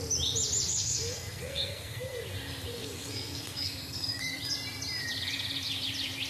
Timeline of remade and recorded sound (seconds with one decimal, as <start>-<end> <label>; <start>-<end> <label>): 0.0-0.7 recorded; 0.7-2.2 remade; 2.2-2.7 recorded; 2.7-4.4 remade; 4.4-6.3 recorded